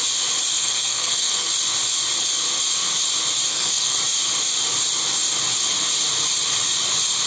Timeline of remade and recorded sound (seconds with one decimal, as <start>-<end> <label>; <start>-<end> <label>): 0.0-0.5 recorded; 0.5-1.5 remade; 1.5-3.5 recorded; 3.5-4.0 remade; 4.0-7.3 recorded